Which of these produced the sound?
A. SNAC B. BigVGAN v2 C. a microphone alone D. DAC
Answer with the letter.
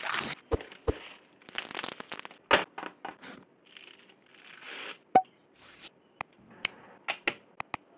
C